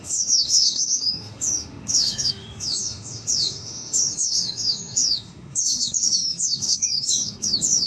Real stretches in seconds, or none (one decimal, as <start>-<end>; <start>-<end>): none